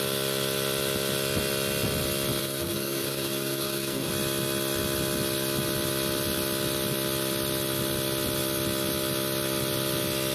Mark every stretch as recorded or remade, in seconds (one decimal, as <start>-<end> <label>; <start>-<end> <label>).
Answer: 0.0-2.4 recorded; 2.4-4.1 remade; 4.1-10.3 recorded